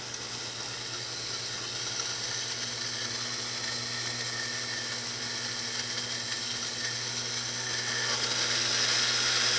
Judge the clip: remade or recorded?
recorded